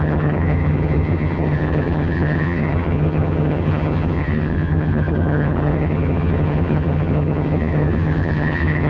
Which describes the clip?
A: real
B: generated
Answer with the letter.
B